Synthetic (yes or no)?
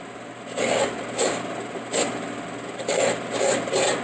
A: no